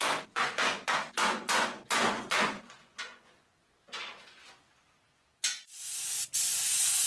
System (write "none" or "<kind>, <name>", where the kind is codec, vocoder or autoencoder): vocoder, Vocos